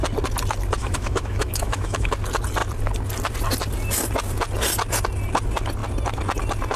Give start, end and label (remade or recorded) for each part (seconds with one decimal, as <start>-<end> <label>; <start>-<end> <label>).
0.0-0.8 recorded; 0.8-2.1 remade; 2.1-6.8 recorded